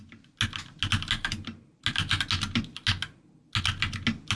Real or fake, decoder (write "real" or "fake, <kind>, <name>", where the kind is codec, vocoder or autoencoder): real